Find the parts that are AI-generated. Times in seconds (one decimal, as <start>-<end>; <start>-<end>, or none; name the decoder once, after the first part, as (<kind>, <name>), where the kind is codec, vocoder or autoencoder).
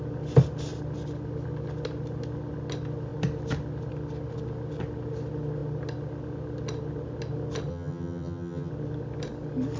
7.7-8.7 (vocoder, HiFi-GAN)